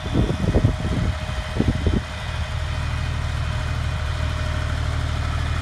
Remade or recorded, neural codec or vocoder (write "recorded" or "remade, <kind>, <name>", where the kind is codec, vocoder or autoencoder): recorded